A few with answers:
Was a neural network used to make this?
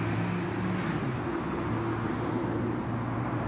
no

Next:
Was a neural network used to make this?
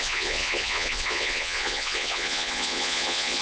yes